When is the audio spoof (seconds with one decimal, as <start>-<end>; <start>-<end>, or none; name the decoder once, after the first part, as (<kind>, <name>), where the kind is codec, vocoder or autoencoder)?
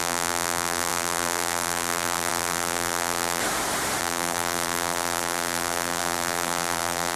0.0-3.4 (vocoder, BigVGAN v2); 4.0-7.2